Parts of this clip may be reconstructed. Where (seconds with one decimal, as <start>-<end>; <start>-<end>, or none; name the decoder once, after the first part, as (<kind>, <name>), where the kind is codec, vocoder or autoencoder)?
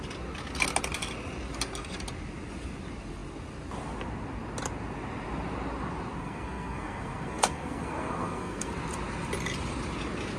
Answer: 6.2-8.7 (codec, SNAC)